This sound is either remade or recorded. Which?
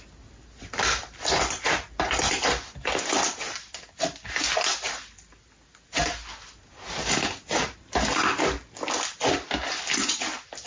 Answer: recorded